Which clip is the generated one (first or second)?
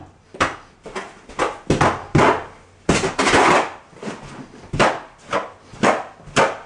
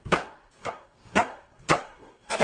second